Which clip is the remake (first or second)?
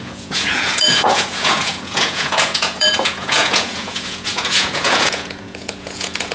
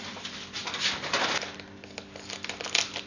first